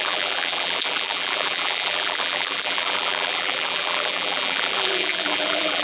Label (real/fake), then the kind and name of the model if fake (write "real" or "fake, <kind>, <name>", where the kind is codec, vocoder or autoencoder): fake, vocoder, BigVGAN v2